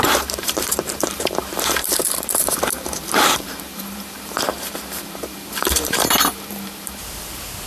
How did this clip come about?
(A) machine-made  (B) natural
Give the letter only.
A